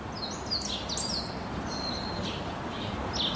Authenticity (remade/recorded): recorded